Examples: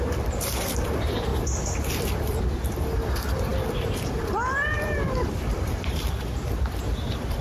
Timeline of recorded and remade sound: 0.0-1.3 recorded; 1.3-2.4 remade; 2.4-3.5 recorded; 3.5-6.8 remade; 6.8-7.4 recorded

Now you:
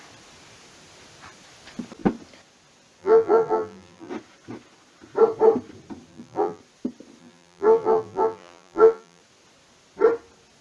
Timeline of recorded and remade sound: 0.0-3.0 recorded; 3.0-4.1 remade; 4.1-6.1 recorded; 6.1-6.6 remade; 6.6-7.2 recorded; 7.2-9.2 remade; 9.2-10.6 recorded